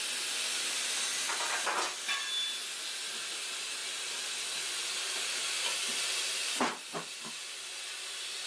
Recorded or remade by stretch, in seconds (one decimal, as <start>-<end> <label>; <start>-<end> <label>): 0.0-6.4 recorded; 6.4-7.7 remade; 7.7-8.5 recorded